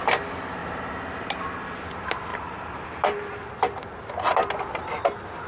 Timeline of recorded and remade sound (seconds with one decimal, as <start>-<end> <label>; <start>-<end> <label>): 0.0-2.3 recorded; 2.3-4.1 remade; 4.1-5.5 recorded